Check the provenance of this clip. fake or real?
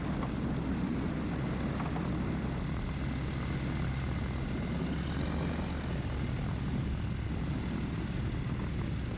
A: real